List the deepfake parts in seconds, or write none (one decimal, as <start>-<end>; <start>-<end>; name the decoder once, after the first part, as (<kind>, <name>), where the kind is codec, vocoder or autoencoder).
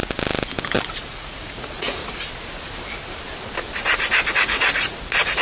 1.0-2.0 (vocoder, Vocos); 4.3-5.4